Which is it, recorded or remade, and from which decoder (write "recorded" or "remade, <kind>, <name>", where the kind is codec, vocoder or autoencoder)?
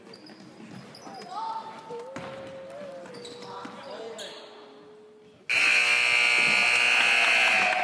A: recorded